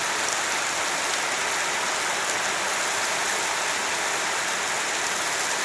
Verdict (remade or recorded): recorded